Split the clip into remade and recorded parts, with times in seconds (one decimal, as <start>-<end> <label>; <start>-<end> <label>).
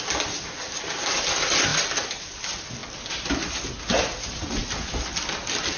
0.0-5.8 recorded